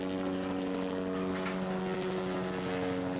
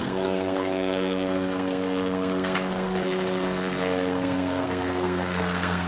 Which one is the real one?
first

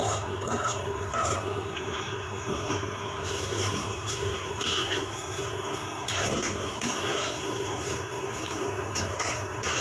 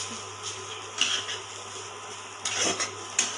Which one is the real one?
second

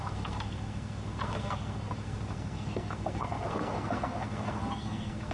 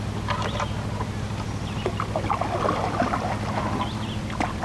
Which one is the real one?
second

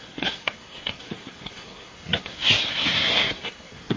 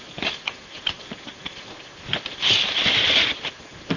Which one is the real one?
second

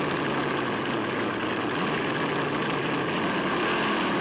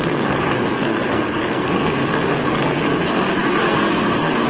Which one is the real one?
first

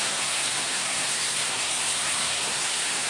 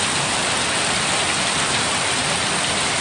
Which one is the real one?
second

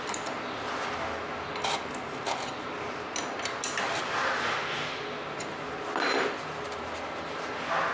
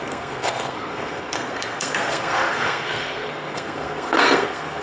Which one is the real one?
first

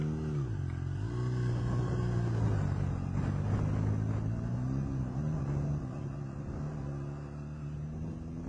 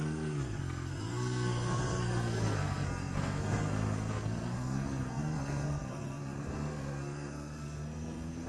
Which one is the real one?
first